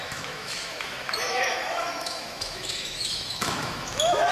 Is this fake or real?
fake